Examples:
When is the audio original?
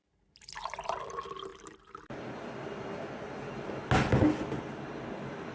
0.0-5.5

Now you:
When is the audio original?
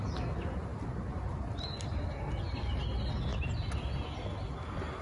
0.0-5.0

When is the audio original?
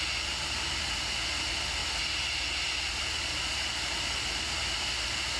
0.0-5.4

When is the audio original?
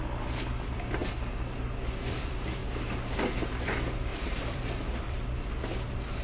1.0-2.0; 2.6-3.5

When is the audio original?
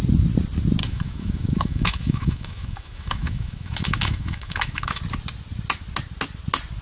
0.0-0.8; 4.9-6.8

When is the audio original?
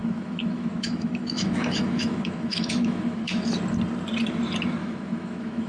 3.4-4.8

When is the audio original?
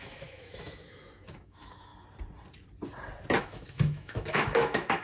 1.9-3.4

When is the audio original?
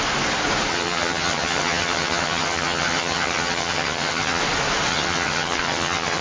0.0-0.7; 4.4-4.9